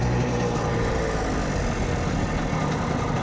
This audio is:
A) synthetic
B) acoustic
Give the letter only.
B